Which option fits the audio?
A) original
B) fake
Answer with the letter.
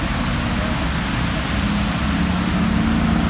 A